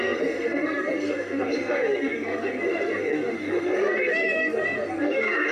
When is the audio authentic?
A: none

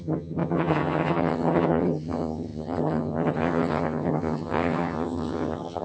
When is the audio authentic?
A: none

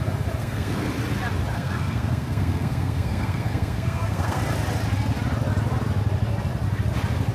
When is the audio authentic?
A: 0.0-0.4; 0.9-1.5; 4.4-7.3